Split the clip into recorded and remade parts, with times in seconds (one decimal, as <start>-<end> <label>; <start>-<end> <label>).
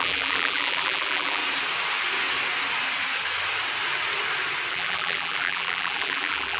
0.0-1.4 remade; 1.4-4.7 recorded; 4.7-6.6 remade